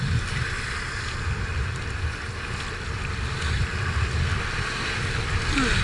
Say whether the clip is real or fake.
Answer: real